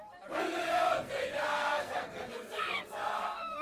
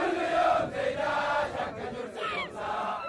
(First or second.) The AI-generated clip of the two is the first